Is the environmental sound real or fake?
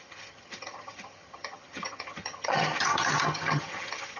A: fake